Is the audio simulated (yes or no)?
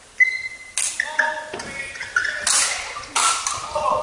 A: no